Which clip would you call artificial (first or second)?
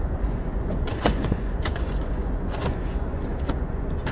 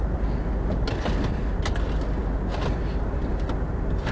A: first